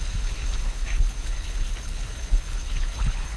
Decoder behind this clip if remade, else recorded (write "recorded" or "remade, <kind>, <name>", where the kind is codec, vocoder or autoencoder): remade, codec, HILCodec